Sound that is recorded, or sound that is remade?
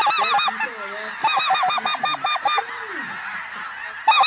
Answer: recorded